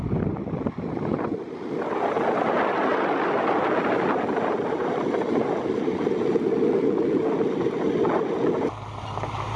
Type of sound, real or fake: real